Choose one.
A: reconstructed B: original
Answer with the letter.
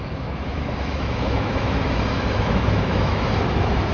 A